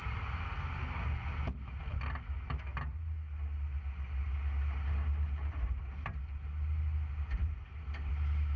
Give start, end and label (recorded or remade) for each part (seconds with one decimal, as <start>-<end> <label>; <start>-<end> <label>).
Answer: 0.0-8.6 recorded